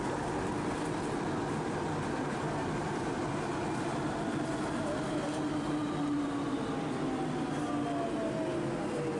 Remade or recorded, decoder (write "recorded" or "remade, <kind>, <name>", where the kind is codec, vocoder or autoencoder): recorded